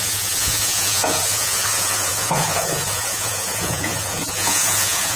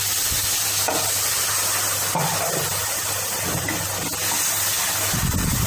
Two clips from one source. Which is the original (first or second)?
second